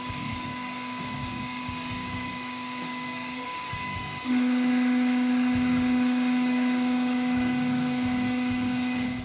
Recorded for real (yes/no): no